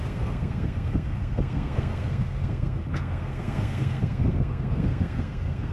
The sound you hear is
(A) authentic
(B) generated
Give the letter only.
B